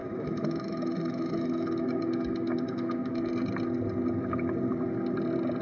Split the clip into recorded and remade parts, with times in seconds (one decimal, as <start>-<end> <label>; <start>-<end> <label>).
0.0-3.3 remade; 3.3-5.6 recorded